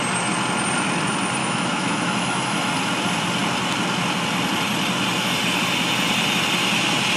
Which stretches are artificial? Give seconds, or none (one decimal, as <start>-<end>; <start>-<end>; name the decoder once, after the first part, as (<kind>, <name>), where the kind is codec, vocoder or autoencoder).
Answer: 1.4-2.7 (autoencoder, DAC-VAE)